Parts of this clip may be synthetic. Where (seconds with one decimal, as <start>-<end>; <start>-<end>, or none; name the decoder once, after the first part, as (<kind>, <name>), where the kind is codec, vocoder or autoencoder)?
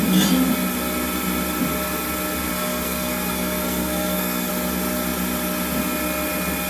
2.5-4.5 (codec, SNAC)